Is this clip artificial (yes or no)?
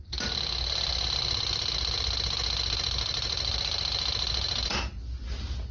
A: no